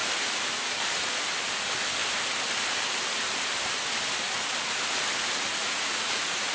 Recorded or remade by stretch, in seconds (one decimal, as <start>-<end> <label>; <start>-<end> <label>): 0.0-5.6 recorded; 5.6-6.5 remade